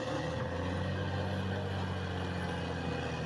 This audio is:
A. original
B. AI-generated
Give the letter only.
A